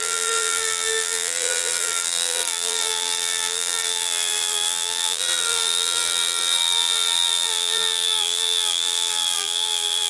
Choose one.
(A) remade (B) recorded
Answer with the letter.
A